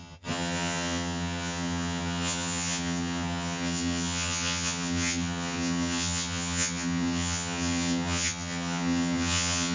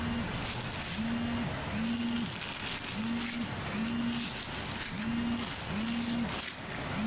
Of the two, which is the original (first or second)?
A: second